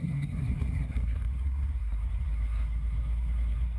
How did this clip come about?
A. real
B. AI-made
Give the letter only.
B